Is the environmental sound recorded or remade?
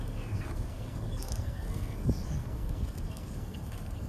remade